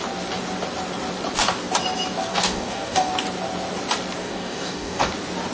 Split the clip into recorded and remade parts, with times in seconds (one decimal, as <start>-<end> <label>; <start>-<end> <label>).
0.0-2.3 recorded; 2.3-3.1 remade; 3.1-4.2 recorded; 4.2-5.1 remade; 5.1-5.5 recorded